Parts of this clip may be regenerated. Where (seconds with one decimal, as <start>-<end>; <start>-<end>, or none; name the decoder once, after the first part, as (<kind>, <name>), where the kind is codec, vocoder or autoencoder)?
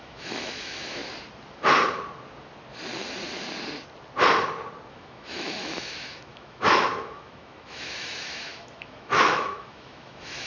0.0-1.0 (autoencoder, DAC-VAE); 4.9-10.5